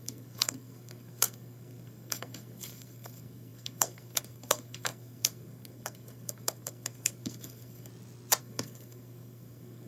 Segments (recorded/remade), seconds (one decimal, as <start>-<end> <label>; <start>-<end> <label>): 0.0-7.9 remade; 7.9-8.4 recorded; 8.4-9.9 remade